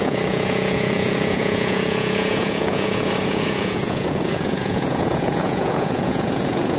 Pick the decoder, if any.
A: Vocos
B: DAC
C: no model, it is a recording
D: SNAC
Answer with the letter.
A